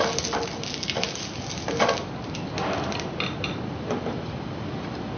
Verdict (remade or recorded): recorded